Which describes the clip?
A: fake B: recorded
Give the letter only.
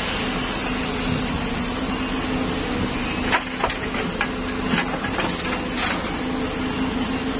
B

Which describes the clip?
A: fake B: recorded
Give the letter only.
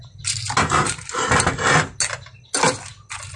B